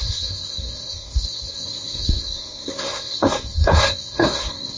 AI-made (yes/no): yes